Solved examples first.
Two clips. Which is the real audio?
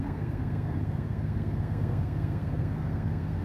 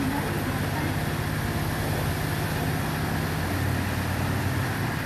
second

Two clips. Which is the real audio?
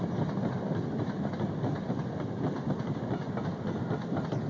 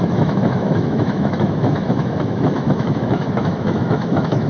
first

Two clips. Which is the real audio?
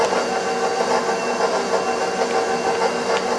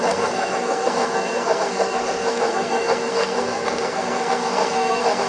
first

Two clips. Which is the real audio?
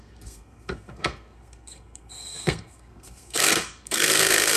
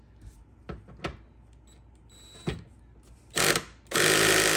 second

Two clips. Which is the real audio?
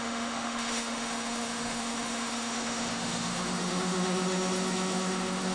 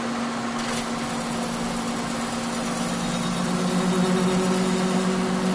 second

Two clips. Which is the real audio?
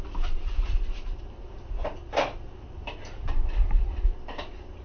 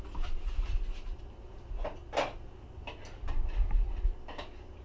second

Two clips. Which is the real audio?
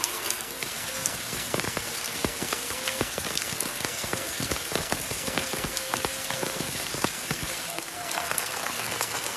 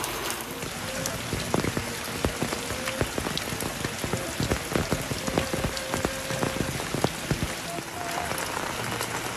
second